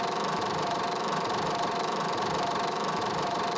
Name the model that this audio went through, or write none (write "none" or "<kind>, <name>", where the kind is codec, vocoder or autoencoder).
vocoder, BigVGAN v2